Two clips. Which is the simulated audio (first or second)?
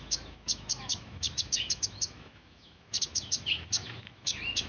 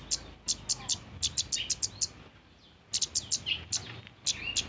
first